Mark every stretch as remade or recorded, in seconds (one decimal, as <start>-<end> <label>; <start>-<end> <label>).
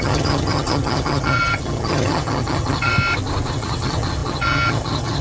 0.0-2.9 remade; 2.9-3.5 recorded; 3.5-5.2 remade